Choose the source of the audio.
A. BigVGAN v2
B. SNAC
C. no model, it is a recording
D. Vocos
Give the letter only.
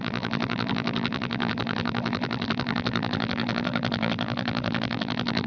A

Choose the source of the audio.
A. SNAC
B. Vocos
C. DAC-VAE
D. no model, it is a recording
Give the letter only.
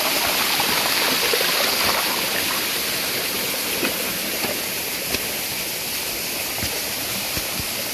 D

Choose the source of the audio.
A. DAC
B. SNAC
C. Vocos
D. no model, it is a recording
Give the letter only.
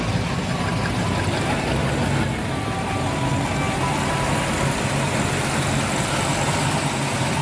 D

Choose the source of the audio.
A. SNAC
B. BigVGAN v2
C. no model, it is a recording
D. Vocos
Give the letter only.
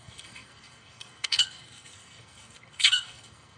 A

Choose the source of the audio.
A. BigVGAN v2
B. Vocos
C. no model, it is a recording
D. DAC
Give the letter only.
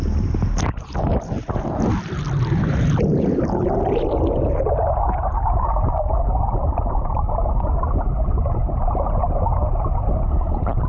C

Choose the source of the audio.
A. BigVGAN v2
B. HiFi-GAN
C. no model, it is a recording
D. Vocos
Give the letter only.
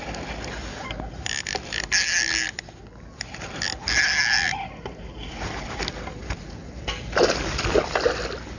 C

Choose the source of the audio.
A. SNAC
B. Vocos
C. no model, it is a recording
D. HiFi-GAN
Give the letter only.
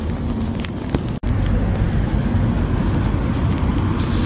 C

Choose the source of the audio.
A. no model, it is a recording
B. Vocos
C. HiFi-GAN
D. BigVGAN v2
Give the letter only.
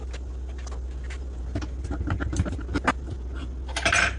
A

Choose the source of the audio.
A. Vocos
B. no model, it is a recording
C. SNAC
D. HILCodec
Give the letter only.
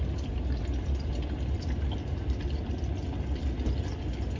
B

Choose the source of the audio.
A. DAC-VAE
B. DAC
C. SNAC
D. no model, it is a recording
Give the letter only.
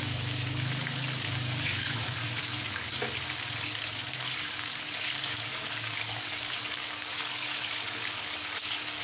B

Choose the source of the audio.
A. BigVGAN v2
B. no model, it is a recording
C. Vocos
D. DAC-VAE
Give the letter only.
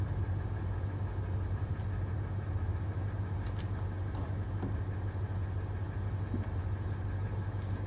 B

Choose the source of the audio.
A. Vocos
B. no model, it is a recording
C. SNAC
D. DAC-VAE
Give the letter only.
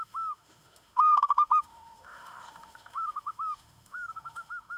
D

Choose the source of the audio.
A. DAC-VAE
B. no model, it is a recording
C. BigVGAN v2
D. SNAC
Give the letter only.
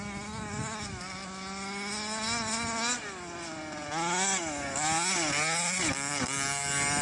B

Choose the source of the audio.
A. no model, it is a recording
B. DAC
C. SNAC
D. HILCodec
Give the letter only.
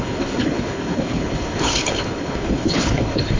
D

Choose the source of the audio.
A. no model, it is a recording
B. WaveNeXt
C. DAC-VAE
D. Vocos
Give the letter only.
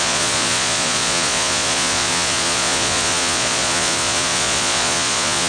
D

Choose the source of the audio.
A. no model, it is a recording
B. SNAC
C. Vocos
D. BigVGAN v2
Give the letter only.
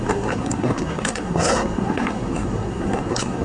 B